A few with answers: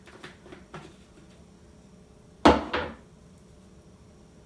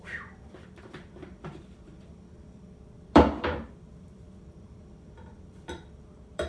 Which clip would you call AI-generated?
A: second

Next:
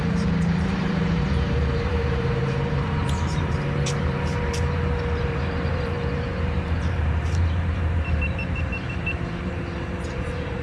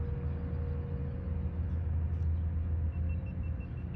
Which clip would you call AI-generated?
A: first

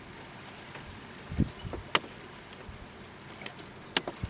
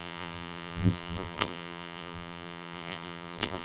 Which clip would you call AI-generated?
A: second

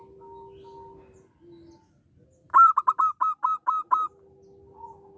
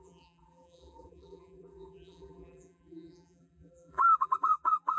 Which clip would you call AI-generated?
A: second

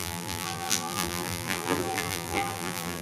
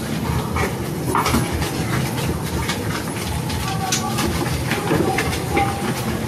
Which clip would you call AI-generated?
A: first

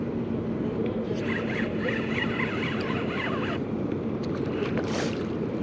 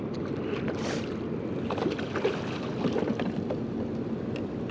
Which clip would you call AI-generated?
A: first